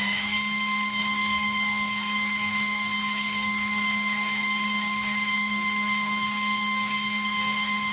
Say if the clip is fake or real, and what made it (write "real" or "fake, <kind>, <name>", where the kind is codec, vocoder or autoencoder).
fake, codec, DAC